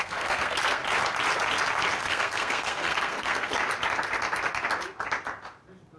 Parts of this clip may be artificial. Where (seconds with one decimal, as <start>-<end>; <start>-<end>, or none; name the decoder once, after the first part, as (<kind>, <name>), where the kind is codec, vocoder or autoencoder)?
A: 0.0-0.8 (codec, SNAC); 2.0-3.5